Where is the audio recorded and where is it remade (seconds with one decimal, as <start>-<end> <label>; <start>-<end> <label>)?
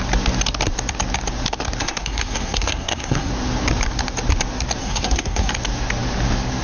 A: 0.0-1.8 recorded; 1.8-3.3 remade; 3.3-4.8 recorded; 4.8-5.5 remade; 5.5-6.6 recorded